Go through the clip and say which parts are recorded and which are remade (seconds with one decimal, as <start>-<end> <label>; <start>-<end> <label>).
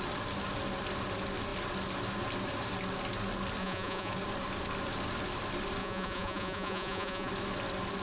0.0-3.6 recorded; 3.6-4.1 remade; 4.1-5.8 recorded; 5.8-7.3 remade; 7.3-8.0 recorded